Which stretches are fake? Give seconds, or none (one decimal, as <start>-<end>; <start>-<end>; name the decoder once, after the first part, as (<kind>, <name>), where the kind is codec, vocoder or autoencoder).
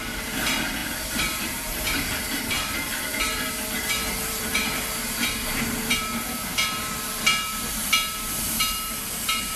0.0-9.6 (vocoder, BigVGAN v2)